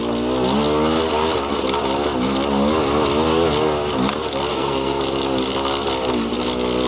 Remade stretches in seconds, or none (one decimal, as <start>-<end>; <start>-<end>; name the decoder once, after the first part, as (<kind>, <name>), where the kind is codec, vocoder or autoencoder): 4.5-5.0 (codec, SNAC)